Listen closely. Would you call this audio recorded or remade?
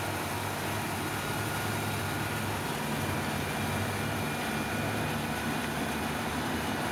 recorded